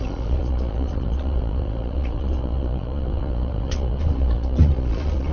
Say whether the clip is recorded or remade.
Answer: remade